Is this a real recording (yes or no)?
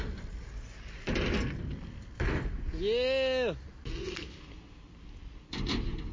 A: yes